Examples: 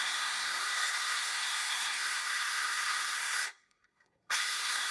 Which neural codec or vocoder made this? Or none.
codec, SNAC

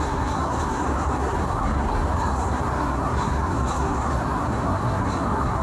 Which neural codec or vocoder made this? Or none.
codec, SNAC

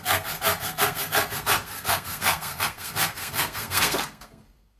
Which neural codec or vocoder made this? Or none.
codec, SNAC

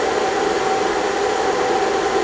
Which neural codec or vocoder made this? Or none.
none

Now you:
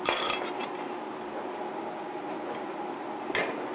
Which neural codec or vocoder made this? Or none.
none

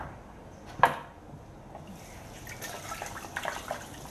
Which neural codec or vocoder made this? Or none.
none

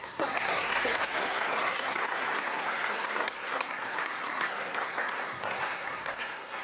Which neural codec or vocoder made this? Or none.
codec, SNAC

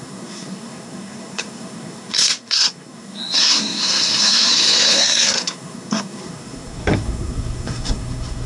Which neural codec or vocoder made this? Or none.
codec, SNAC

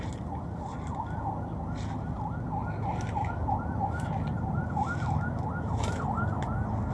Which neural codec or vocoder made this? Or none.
none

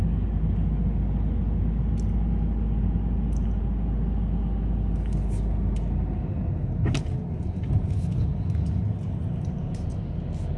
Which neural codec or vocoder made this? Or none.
none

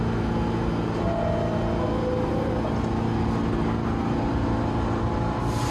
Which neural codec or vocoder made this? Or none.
none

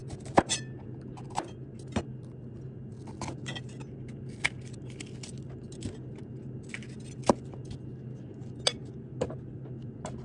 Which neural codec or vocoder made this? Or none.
none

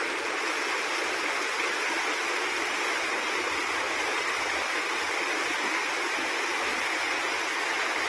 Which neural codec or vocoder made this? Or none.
none